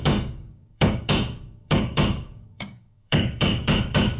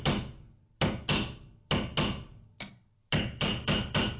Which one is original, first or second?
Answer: second